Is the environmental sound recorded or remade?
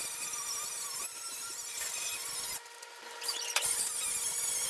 recorded